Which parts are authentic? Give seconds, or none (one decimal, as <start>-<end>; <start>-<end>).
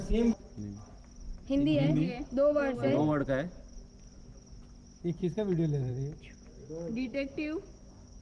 0.0-6.6